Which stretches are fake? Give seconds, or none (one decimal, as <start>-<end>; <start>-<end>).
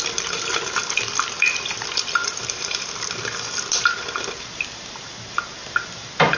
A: 2.2-3.2